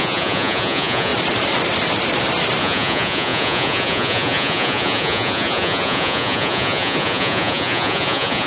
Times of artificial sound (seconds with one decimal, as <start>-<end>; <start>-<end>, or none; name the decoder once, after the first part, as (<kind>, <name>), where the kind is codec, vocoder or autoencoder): 0.0-1.1 (vocoder, Vocos); 2.6-8.5